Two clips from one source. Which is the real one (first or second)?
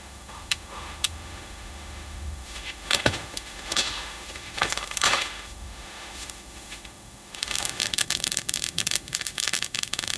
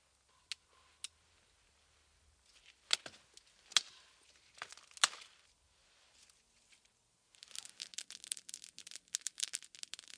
second